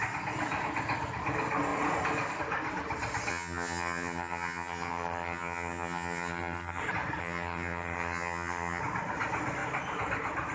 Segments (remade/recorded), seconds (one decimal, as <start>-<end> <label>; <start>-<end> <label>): 0.0-3.3 recorded; 3.3-6.8 remade; 6.8-7.2 recorded; 7.2-8.8 remade; 8.8-10.5 recorded